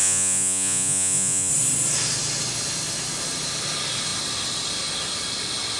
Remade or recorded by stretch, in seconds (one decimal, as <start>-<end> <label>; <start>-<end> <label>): 0.0-1.5 remade; 1.5-5.8 recorded